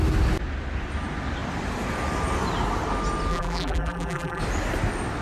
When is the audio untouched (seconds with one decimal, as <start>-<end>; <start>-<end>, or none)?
0.0-3.3; 4.4-5.2